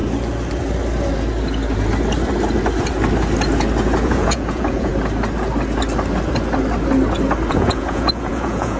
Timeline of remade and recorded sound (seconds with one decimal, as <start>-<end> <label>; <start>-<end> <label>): 0.0-4.0 recorded; 4.0-4.9 remade; 4.9-7.5 recorded; 7.5-8.8 remade